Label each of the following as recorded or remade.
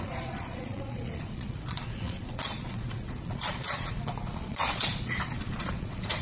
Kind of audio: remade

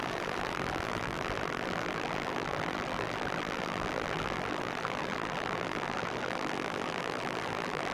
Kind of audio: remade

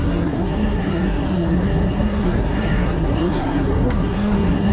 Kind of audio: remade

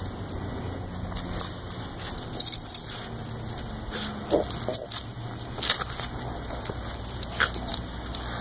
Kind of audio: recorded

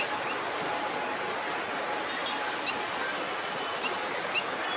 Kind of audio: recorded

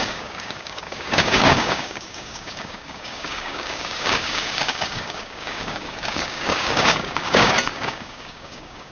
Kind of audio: remade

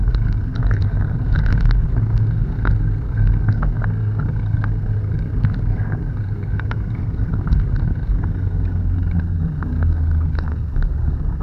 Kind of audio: remade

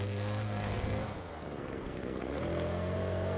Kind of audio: remade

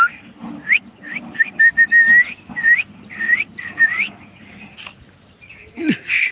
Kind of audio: recorded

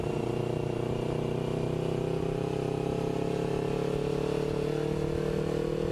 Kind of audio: recorded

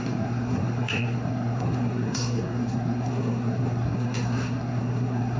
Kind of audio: remade